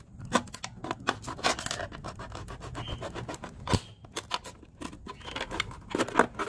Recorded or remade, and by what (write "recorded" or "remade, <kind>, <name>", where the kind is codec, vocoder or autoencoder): recorded